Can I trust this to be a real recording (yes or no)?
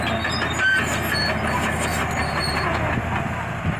yes